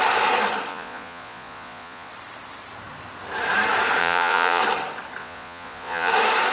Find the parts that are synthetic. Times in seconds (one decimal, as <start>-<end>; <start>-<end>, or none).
0.7-2.1; 4.0-4.6; 5.2-6.1